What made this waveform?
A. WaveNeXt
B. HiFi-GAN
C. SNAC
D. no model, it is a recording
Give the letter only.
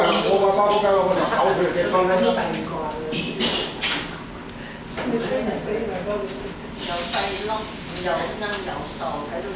D